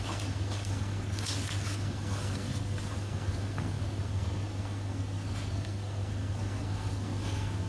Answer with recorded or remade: remade